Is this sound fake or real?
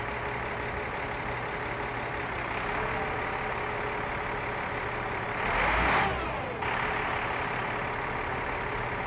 real